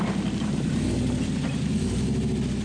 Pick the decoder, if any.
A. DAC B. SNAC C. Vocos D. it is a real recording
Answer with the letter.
D